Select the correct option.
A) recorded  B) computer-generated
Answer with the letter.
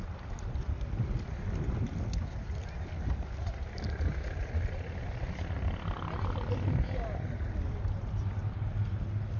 A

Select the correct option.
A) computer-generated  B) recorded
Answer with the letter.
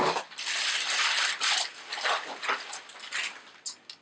B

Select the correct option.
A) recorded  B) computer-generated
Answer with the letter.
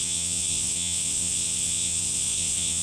B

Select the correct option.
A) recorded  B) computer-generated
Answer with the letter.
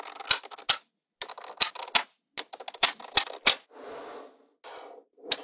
A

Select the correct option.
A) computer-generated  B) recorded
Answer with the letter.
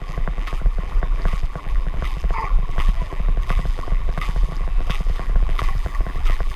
A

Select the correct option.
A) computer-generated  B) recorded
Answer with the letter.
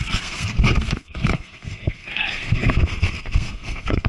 A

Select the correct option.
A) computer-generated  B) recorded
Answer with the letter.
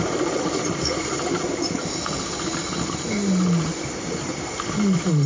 B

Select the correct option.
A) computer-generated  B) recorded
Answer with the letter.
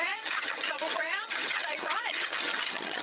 A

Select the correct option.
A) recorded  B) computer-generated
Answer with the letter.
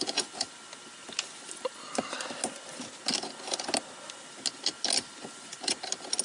A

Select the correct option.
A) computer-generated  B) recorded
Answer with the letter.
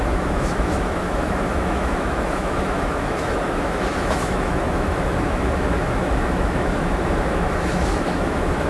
A